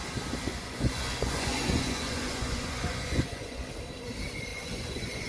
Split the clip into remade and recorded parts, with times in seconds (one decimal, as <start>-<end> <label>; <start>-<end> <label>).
0.0-0.5 recorded; 0.5-3.7 remade; 3.7-4.5 recorded; 4.5-5.3 remade